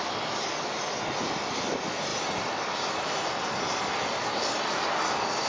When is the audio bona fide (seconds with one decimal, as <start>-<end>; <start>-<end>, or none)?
0.0-5.5